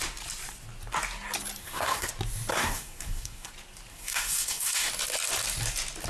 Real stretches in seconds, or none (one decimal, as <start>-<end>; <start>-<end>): 0.0-1.6; 2.1-2.5; 3.5-3.9; 4.9-6.1